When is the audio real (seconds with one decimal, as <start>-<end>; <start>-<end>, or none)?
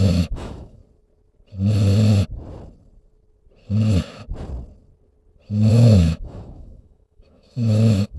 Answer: 0.8-5.7